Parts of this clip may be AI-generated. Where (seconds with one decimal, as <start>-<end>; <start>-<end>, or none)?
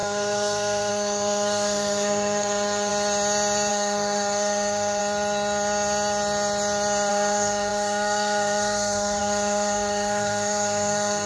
0.0-2.9; 3.7-5.0; 7.1-11.3